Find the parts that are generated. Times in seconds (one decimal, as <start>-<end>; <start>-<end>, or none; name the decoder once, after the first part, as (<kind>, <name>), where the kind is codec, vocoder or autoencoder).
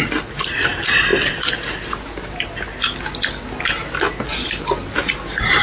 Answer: none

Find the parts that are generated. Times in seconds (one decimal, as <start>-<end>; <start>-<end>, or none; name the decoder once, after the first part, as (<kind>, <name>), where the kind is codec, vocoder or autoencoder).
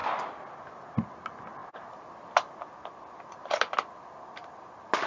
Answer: none